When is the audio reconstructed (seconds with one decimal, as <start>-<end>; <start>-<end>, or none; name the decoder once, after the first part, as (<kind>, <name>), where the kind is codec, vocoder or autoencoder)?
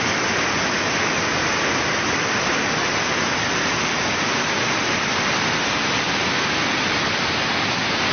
none